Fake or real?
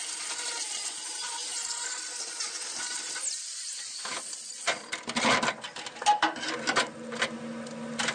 real